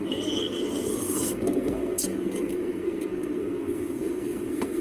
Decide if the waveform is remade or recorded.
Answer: remade